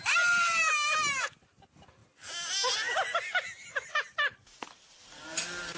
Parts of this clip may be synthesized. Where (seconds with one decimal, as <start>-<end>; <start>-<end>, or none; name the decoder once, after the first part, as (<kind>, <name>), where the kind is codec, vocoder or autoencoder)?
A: none